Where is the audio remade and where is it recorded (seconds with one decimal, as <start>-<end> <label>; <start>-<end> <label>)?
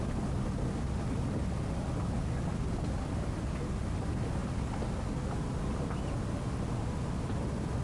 0.0-7.8 recorded